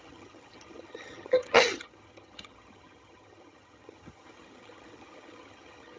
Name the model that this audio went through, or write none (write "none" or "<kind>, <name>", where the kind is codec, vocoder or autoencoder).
vocoder, HiFi-GAN